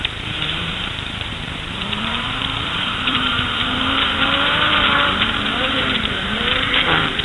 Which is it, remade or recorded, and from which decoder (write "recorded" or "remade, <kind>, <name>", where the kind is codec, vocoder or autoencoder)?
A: remade, vocoder, BigVGAN v2